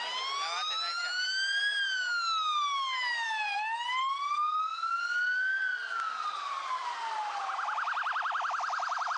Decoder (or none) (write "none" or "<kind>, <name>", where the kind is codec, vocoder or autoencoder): none